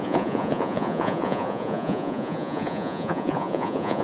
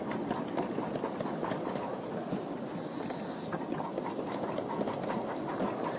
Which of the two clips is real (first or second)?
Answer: second